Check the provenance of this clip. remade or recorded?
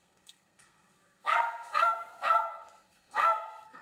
remade